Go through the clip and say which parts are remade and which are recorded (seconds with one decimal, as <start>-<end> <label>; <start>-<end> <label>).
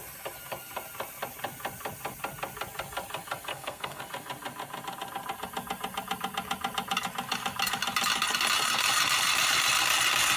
0.0-3.5 recorded; 3.5-4.0 remade; 4.0-10.4 recorded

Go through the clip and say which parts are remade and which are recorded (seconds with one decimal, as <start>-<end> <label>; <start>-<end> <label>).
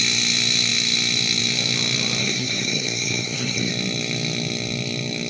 0.0-2.2 recorded; 2.2-3.7 remade; 3.7-5.3 recorded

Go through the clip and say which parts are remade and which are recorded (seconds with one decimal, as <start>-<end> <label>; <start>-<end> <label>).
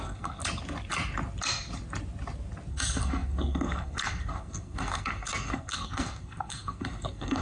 0.0-0.4 remade; 0.4-2.7 recorded; 2.7-7.4 remade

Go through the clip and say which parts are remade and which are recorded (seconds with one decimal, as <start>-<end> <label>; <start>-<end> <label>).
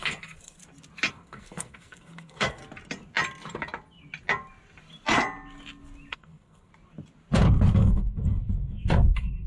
0.0-0.6 remade; 0.6-1.1 recorded; 1.1-2.6 remade; 2.6-6.1 recorded; 6.1-6.7 remade; 6.7-7.7 recorded; 7.7-9.5 remade